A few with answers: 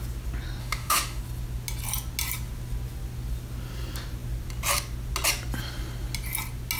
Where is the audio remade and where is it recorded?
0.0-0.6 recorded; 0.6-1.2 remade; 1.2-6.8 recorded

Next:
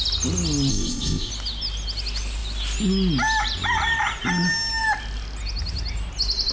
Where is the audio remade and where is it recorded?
0.0-0.7 recorded; 0.7-1.3 remade; 1.3-6.5 recorded

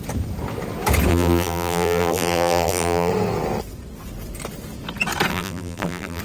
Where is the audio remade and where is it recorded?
0.0-1.1 recorded; 1.1-3.1 remade; 3.1-5.3 recorded; 5.3-6.2 remade